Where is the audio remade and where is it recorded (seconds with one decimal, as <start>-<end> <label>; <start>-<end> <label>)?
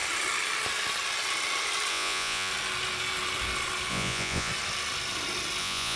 0.0-1.9 recorded; 1.9-2.5 remade; 2.5-3.9 recorded; 3.9-4.5 remade; 4.5-5.6 recorded; 5.6-6.0 remade